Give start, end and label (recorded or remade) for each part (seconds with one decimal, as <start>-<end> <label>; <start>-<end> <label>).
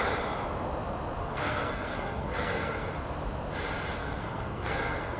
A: 0.0-1.2 recorded; 1.2-2.9 remade; 2.9-4.0 recorded; 4.0-5.2 remade